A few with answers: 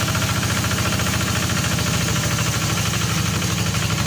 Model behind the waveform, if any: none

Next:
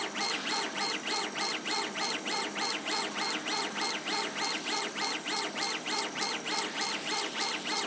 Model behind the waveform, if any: none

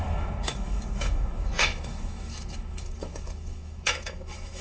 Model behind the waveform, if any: autoencoder, DAC-VAE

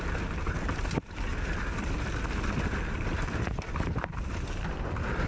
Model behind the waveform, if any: none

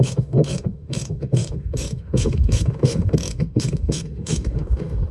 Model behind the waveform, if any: autoencoder, DAC-VAE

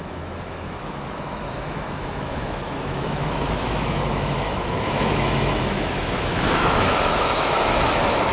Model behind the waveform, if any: autoencoder, DAC-VAE